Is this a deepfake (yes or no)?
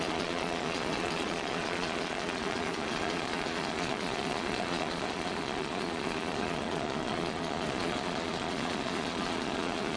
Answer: yes